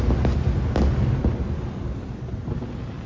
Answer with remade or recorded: recorded